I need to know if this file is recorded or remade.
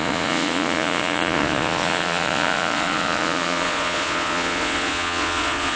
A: remade